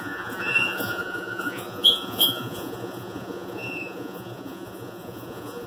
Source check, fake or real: fake